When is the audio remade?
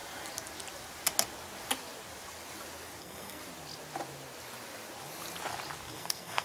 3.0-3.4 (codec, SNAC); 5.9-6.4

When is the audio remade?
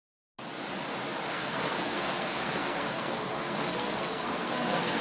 1.3-5.0 (codec, SNAC)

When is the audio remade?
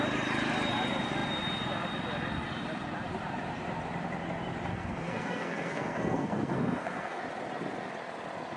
4.7-7.2 (codec, SNAC)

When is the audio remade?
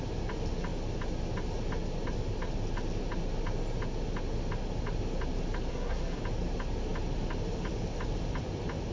5.7-6.2 (codec, SNAC)